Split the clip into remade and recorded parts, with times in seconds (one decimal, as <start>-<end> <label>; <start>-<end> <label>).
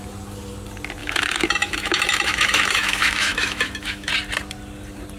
0.0-1.0 recorded; 1.0-4.1 remade; 4.1-5.2 recorded